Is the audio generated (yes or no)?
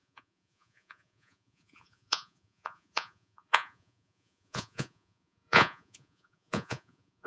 yes